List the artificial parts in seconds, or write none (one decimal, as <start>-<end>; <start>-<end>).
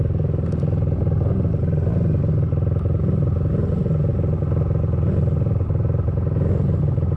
none